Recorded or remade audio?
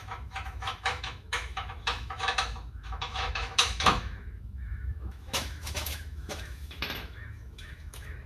remade